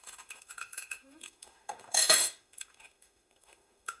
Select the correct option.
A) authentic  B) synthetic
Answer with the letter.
B